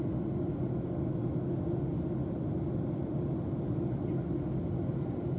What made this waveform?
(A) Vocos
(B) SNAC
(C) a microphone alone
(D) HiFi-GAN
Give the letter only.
C